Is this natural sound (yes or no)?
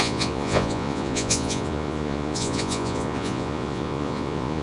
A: no